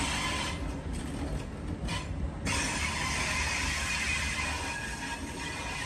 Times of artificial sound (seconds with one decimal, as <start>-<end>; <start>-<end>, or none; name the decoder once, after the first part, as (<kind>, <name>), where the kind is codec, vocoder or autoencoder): none